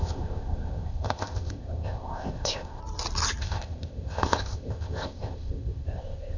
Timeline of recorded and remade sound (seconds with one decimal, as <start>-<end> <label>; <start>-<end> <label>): 0.0-2.8 remade; 2.8-3.4 recorded; 3.4-6.4 remade